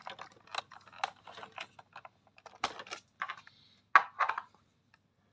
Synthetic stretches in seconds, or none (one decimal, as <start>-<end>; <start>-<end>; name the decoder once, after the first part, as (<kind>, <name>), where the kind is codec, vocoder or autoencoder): none